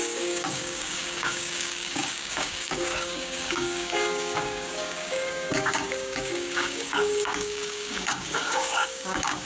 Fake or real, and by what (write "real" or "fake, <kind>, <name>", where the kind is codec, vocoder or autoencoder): fake, codec, DAC